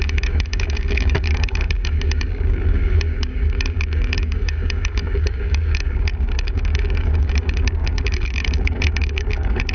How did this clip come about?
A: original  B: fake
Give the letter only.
B